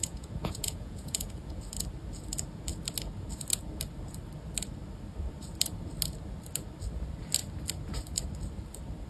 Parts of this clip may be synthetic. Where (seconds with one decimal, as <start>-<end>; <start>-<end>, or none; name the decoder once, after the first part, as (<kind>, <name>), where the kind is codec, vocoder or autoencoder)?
0.0-1.6 (vocoder, Vocos)